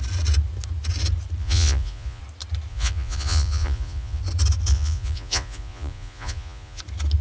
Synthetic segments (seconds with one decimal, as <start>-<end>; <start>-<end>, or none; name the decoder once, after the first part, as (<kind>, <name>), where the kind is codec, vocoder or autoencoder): 1.4-2.2 (vocoder, Vocos); 2.7-4.2; 4.7-6.8